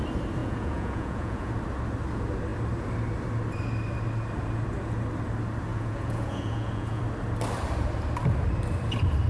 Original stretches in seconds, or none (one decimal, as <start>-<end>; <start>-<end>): 0.0-0.4; 1.5-5.7; 7.0-9.3